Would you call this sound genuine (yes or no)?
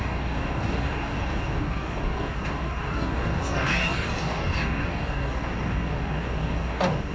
no